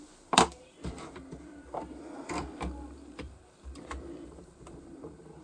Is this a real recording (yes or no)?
no